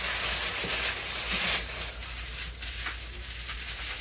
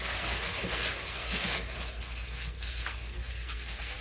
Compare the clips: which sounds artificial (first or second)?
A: second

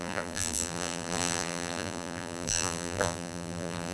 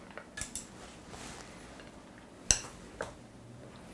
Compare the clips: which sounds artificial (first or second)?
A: first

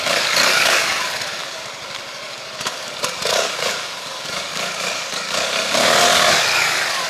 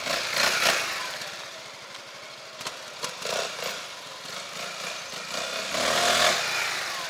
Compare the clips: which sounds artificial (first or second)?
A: first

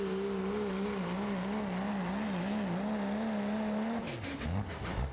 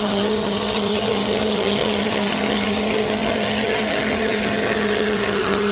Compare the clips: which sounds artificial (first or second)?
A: second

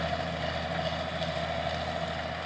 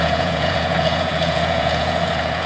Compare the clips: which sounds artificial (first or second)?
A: second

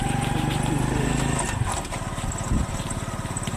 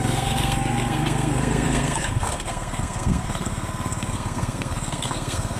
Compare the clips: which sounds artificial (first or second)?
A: second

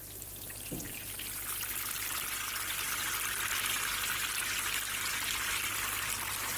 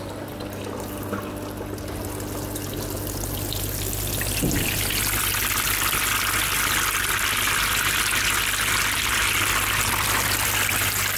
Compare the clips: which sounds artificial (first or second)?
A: first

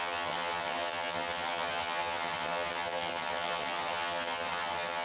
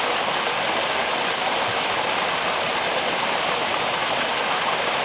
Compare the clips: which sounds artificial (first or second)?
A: first